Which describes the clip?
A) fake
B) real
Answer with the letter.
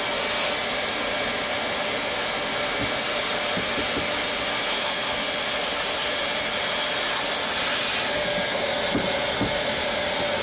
B